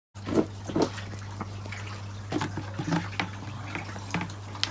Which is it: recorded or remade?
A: recorded